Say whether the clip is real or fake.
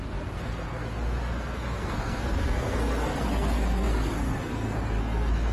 fake